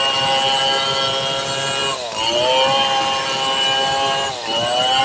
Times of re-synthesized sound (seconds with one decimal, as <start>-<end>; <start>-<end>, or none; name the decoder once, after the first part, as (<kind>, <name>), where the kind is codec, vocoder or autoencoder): none

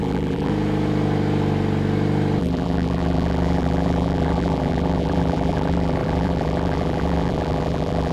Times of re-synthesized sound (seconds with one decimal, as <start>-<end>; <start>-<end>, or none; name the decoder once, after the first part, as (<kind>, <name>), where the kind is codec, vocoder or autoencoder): 0.0-0.5 (vocoder, BigVGAN v2); 2.4-8.1

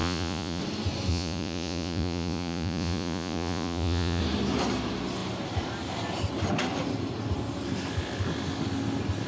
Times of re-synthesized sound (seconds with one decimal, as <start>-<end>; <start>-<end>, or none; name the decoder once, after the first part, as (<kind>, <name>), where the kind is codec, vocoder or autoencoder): 0.0-0.6 (vocoder, Vocos); 1.1-4.2

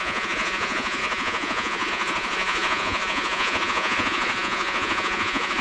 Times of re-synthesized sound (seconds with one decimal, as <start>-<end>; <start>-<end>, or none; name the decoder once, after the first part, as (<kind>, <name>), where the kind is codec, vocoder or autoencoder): 0.0-5.6 (vocoder, Vocos)

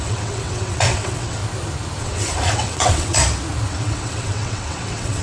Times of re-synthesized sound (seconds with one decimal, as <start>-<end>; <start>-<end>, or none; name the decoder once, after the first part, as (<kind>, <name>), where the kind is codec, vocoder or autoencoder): 0.0-1.4 (vocoder, WaveNeXt); 2.0-3.2; 3.7-5.2

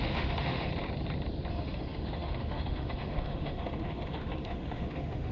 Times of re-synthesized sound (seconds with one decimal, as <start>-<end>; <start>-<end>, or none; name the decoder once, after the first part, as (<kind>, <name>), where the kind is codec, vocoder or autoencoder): 0.0-0.7 (autoencoder, DAC-VAE); 1.5-5.3

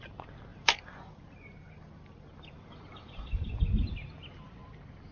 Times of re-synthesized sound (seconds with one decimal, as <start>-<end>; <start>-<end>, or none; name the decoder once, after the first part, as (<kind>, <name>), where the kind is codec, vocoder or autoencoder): 0.5-3.6 (vocoder, BigVGAN v2)